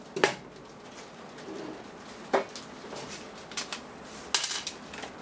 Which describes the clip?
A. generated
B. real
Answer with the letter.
B